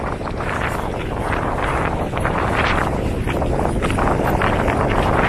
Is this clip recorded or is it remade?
remade